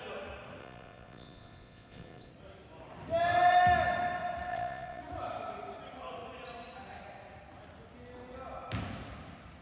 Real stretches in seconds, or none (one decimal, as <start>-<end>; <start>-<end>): 0.0-0.6; 2.3-4.5; 5.0-9.6